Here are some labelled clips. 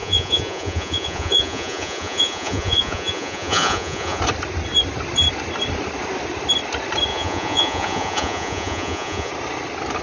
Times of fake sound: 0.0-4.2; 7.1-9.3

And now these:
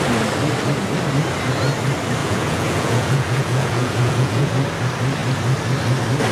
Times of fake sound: 2.2-4.5

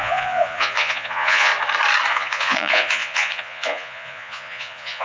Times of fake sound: 0.0-1.5; 2.1-5.0

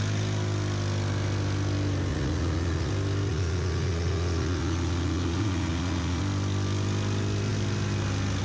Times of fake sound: 2.1-2.9; 3.3-6.2

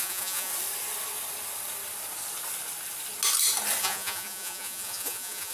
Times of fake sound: 0.0-0.5; 3.8-5.5